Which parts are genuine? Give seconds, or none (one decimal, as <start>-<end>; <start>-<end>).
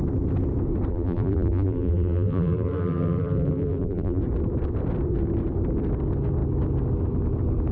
0.0-0.9; 4.2-7.7